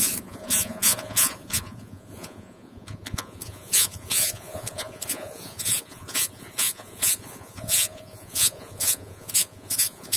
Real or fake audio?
fake